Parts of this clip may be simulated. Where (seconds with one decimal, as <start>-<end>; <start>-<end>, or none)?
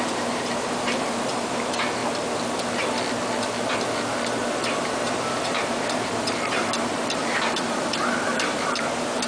0.0-2.0; 4.8-9.3